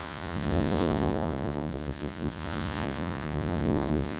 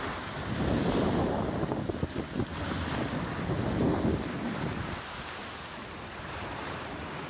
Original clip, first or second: second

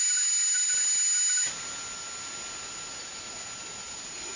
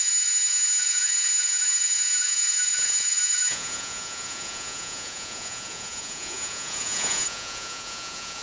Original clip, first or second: first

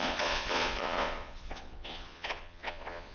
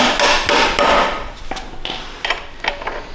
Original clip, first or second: second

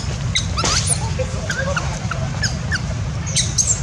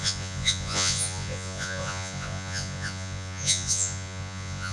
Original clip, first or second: first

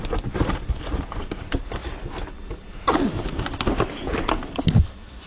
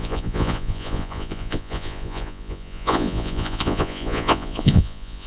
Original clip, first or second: first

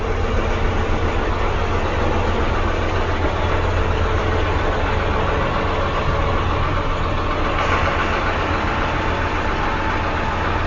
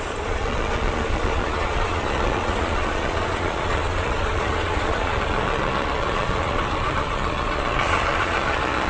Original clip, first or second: first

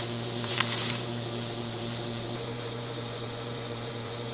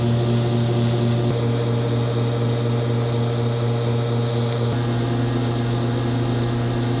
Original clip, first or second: second